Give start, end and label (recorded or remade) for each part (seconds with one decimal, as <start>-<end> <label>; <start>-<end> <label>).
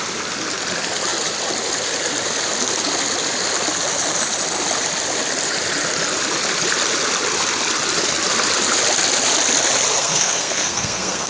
0.0-10.0 recorded; 10.0-11.3 remade